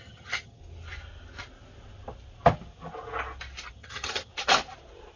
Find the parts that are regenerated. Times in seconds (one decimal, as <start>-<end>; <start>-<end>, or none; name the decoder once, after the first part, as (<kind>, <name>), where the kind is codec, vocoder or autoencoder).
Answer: 0.0-0.6 (vocoder, HiFi-GAN); 3.7-4.3